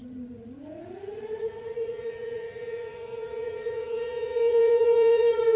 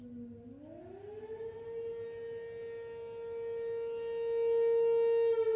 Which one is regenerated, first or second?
first